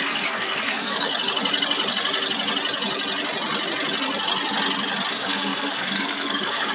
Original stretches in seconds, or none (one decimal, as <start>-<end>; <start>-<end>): 1.1-5.1